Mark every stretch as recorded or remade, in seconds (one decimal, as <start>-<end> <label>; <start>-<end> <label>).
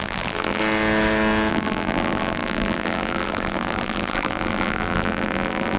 0.0-0.6 remade; 0.6-1.5 recorded; 1.5-5.8 remade